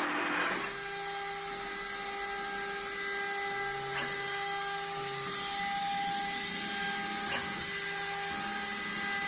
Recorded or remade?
recorded